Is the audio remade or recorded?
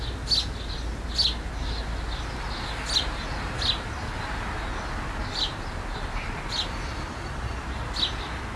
recorded